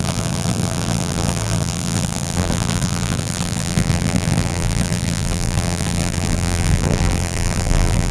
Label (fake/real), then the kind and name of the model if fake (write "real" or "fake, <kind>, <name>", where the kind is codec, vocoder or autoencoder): fake, vocoder, BigVGAN v2